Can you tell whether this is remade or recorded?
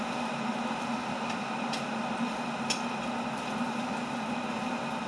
recorded